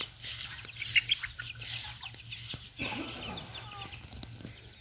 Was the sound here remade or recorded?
recorded